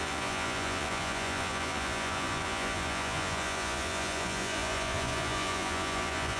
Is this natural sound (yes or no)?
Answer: no